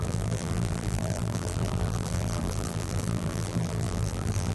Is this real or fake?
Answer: fake